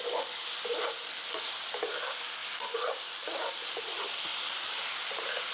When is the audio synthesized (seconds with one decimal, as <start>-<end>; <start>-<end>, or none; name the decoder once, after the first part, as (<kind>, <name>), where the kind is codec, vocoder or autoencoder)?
4.3-5.0 (vocoder, BigVGAN v2)